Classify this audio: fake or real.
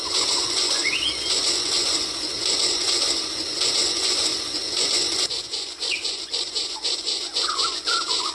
fake